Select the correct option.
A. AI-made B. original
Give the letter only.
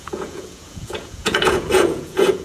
A